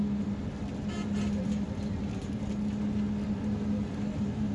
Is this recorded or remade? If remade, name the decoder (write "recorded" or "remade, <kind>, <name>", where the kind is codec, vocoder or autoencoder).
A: recorded